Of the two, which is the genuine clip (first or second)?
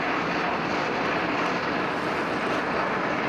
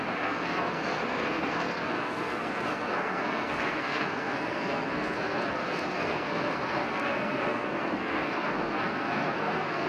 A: first